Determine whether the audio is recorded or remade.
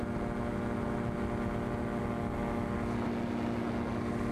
recorded